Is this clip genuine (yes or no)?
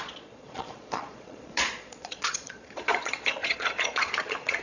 no